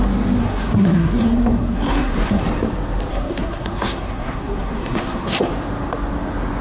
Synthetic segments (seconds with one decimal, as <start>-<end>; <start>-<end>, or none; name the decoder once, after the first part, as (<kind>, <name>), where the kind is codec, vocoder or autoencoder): 0.4-2.4 (codec, SNAC); 3.1-5.5